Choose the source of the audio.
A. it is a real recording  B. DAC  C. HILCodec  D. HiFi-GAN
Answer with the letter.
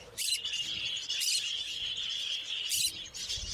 A